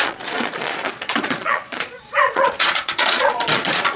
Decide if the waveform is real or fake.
fake